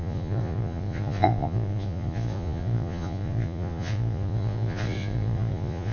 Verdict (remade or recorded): remade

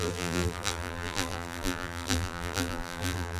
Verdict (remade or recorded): remade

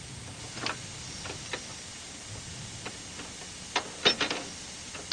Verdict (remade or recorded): recorded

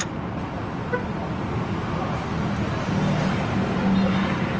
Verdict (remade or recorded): recorded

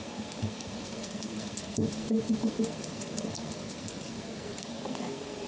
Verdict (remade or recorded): remade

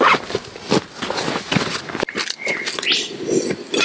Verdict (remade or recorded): recorded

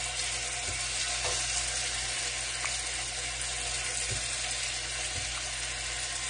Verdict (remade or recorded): recorded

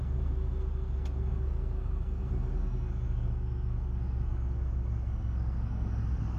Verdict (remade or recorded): remade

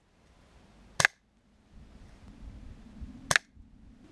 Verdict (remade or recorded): recorded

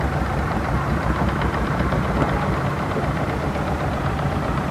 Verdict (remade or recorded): remade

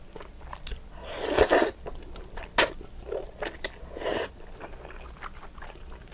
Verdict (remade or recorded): recorded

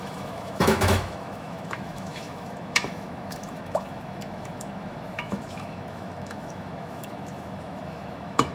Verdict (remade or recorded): remade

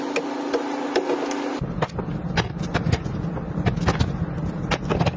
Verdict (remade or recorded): recorded